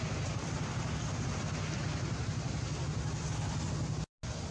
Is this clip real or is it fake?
real